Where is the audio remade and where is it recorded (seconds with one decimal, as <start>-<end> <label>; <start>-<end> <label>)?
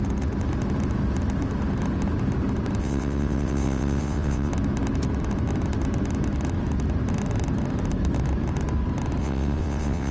0.0-2.8 recorded; 2.8-4.5 remade; 4.5-9.2 recorded; 9.2-10.1 remade